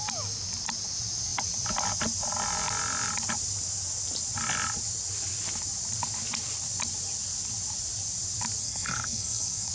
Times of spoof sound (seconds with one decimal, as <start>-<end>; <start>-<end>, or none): 8.6-9.7